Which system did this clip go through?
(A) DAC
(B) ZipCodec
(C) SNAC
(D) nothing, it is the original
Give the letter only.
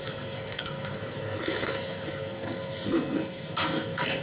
C